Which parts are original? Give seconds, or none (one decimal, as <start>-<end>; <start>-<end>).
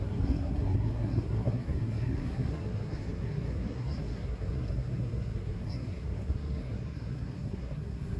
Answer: none